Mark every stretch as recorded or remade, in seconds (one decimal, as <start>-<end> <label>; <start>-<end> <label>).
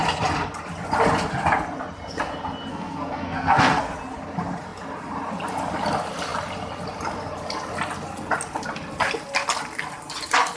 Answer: 0.0-2.7 recorded; 2.7-3.8 remade; 3.8-10.6 recorded